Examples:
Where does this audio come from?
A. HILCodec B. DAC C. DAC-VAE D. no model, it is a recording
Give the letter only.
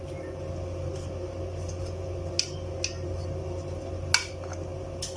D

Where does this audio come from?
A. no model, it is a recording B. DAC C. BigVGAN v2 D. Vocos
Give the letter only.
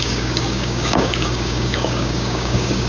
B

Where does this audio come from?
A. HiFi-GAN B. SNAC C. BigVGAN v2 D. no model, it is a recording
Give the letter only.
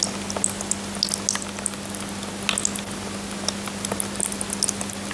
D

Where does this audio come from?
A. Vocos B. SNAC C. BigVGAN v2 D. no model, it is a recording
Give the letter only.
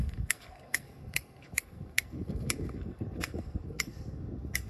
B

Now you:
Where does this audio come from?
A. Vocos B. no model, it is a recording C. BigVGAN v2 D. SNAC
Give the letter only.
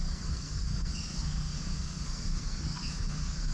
D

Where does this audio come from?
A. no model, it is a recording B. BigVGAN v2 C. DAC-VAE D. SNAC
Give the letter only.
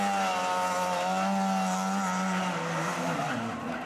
A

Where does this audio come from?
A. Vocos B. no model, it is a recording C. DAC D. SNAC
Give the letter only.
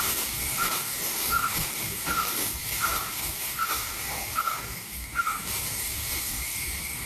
C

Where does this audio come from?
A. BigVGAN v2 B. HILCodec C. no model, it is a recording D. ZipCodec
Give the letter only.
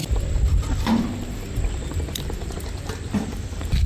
A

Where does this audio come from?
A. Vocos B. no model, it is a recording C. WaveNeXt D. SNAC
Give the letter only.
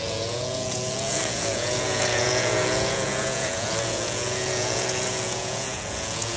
A